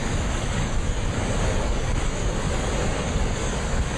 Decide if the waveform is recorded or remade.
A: remade